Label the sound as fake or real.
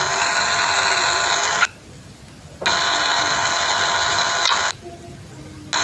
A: real